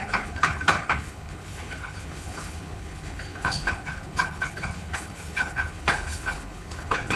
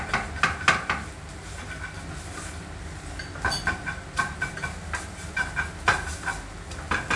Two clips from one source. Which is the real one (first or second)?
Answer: second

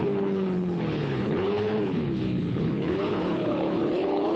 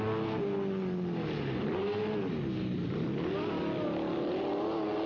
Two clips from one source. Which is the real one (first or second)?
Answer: second